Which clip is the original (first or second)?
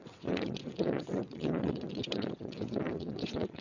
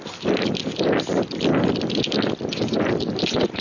second